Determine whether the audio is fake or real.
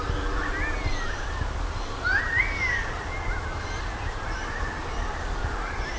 real